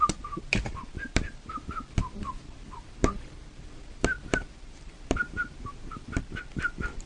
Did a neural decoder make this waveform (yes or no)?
yes